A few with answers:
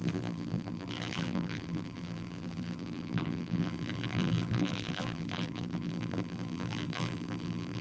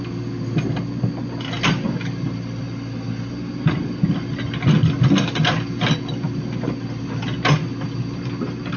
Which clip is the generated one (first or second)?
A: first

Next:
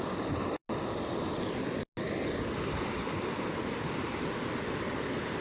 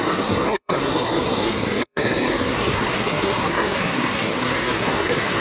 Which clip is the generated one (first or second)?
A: second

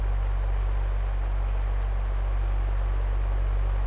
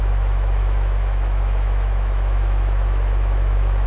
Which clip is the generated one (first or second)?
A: second